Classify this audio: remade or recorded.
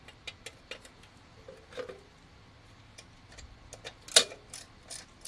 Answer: recorded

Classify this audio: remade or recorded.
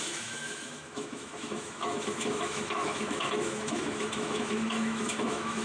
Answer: remade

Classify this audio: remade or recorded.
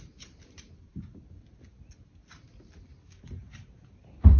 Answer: recorded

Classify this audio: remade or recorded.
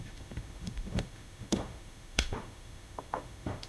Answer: remade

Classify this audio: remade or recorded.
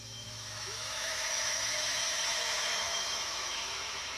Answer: remade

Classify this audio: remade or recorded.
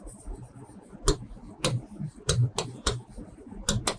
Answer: recorded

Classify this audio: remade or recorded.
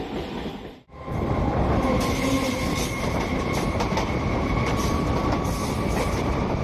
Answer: recorded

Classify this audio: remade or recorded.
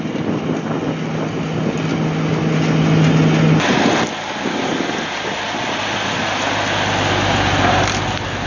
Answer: recorded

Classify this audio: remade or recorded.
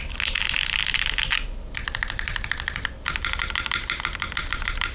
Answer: recorded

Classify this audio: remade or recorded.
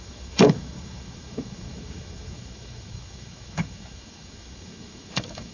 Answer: remade